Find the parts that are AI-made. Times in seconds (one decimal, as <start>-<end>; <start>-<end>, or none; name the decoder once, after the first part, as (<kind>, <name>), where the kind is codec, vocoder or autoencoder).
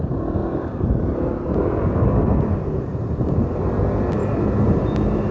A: 0.4-3.6 (vocoder, BigVGAN v2); 4.2-4.8